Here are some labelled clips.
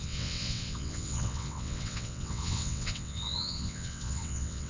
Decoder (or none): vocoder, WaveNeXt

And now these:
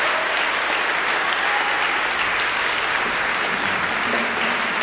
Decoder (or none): none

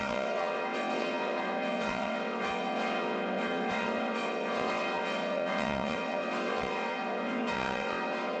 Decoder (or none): vocoder, WaveNeXt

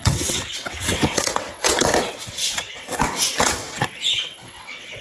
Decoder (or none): vocoder, WaveNeXt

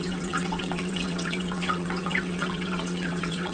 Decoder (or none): vocoder, WaveNeXt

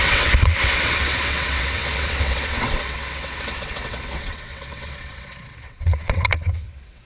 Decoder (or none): vocoder, WaveNeXt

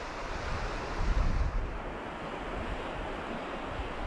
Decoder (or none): none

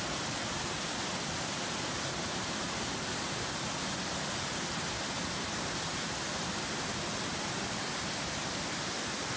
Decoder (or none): none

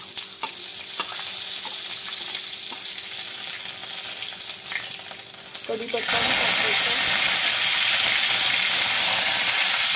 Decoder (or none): none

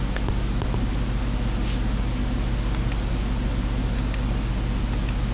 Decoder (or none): none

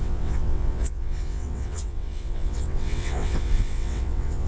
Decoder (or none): vocoder, WaveNeXt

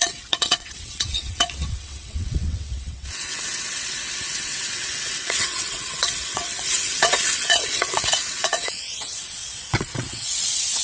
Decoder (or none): vocoder, WaveNeXt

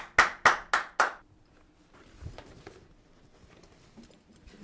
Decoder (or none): none